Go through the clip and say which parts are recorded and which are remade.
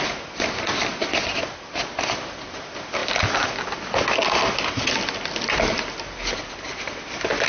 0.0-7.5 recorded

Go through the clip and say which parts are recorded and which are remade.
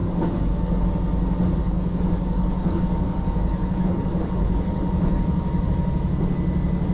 0.0-0.8 remade; 0.8-1.6 recorded; 1.6-5.7 remade; 5.7-6.9 recorded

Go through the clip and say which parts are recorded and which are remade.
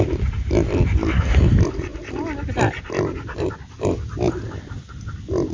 0.0-5.5 recorded